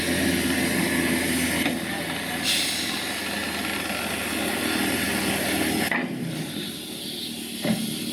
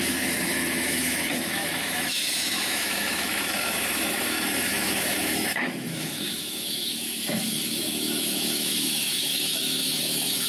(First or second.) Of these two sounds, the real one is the first